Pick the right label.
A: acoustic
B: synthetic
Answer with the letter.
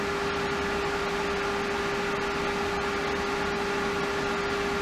A